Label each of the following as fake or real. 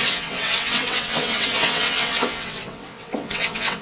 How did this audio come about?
fake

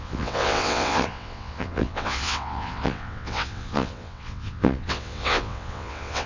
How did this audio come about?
fake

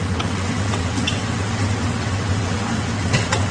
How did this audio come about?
fake